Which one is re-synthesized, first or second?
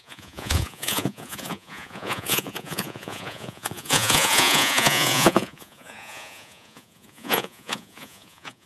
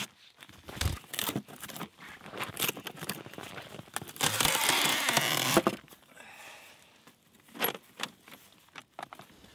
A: first